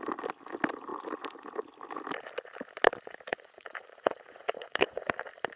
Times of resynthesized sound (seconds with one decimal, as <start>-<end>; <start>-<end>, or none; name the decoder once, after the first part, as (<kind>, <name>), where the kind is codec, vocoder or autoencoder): 3.3-5.6 (vocoder, Vocos)